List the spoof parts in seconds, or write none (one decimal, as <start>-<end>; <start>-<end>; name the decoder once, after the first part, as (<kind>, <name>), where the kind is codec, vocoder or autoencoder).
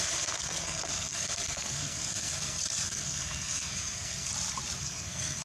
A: 0.0-4.3 (codec, SNAC); 4.8-5.4